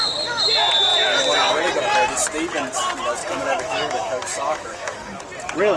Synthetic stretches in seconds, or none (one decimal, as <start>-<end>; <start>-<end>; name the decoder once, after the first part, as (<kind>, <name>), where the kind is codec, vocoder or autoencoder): 3.2-5.2 (autoencoder, DAC-VAE)